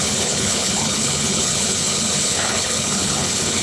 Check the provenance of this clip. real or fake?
fake